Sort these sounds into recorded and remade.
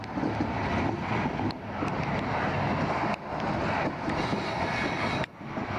recorded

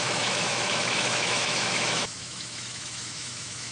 remade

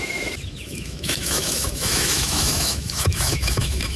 remade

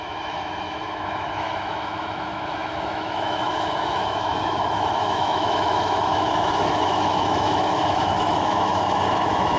remade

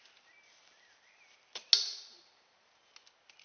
recorded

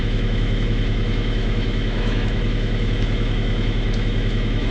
remade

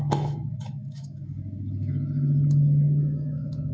remade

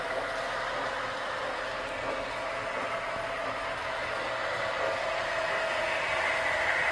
recorded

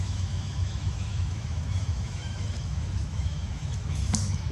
remade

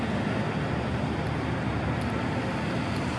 recorded